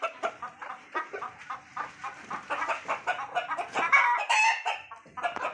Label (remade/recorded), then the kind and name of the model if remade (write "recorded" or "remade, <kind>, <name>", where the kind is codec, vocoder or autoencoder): recorded